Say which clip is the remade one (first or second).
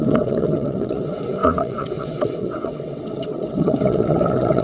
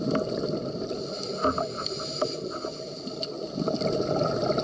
first